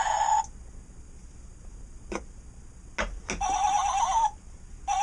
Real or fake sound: real